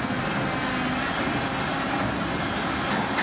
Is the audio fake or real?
real